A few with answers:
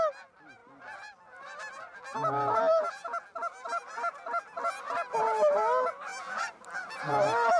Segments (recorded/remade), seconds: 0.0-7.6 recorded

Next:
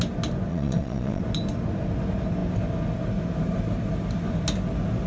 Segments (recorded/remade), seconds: 0.0-0.5 recorded; 0.5-1.2 remade; 1.2-5.1 recorded

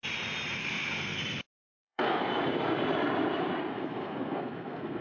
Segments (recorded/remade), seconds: 0.0-0.6 recorded; 0.6-1.2 remade; 1.2-1.6 recorded; 1.6-2.2 remade; 2.2-3.7 recorded; 3.7-5.0 remade

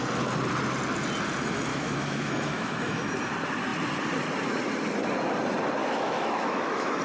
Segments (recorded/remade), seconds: 0.0-1.7 recorded; 1.7-3.1 remade; 3.1-5.8 recorded; 5.8-7.0 remade

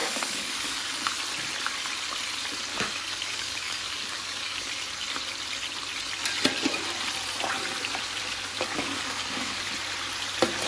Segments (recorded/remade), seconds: 0.0-1.1 remade; 1.1-2.7 recorded; 2.7-4.7 remade; 4.7-8.5 recorded; 8.5-9.7 remade; 9.7-10.7 recorded